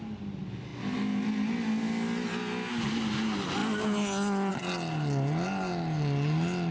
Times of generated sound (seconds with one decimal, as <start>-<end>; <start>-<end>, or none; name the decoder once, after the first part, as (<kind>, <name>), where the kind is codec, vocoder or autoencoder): none